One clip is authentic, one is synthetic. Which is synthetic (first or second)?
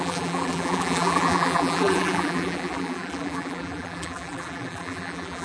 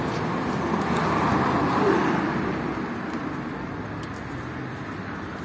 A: first